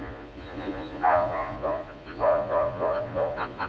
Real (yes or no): no